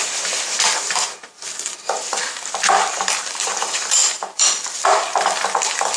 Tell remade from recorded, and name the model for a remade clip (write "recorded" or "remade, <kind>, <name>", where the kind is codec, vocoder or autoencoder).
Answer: remade, vocoder, BigVGAN v2